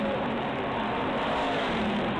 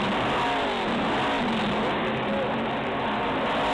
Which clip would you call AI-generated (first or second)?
first